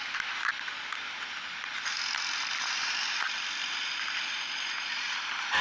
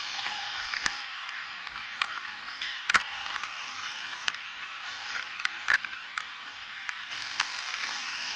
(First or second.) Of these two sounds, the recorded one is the first